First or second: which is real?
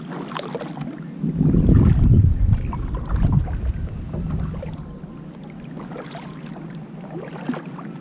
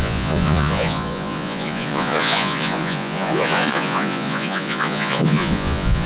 first